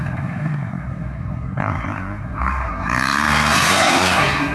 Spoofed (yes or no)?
yes